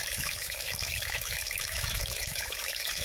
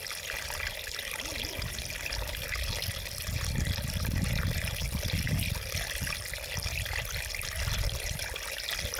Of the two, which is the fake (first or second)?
first